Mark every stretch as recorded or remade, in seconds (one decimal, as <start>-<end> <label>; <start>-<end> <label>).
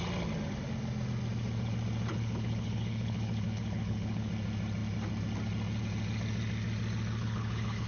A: 0.0-2.1 recorded; 2.1-4.3 remade; 4.3-7.2 recorded; 7.2-7.9 remade